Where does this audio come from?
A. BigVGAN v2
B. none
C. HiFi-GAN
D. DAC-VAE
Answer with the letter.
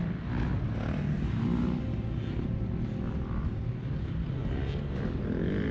B